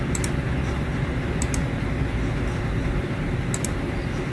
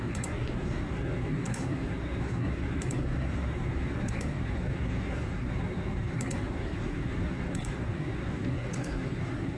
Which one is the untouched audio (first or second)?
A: first